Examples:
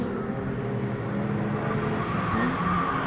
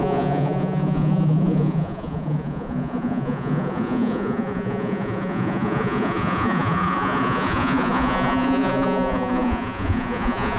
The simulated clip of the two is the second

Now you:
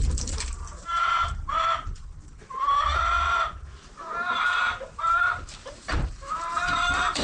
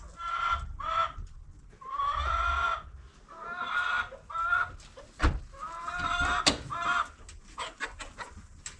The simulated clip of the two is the first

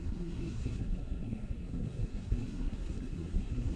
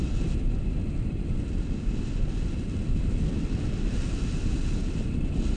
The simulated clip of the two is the first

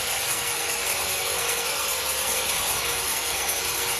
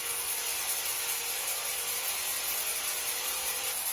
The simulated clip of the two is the first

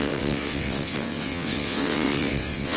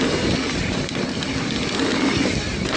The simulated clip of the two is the first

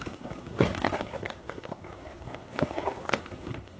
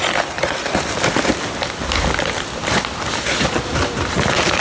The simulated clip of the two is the first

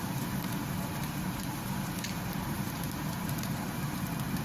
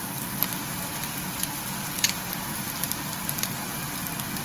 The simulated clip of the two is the first